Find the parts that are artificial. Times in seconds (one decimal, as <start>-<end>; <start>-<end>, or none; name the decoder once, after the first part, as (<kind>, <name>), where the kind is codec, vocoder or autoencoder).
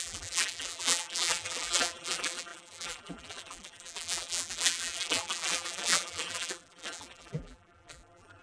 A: 0.0-8.4 (vocoder, BigVGAN v2)